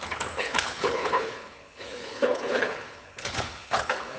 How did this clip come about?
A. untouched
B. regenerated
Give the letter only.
B